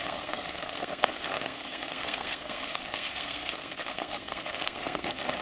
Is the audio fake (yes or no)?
yes